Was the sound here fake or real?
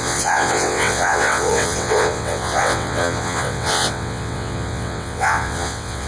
fake